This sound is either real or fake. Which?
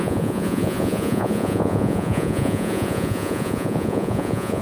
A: fake